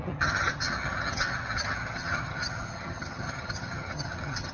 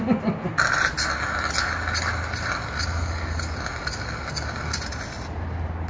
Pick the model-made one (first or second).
first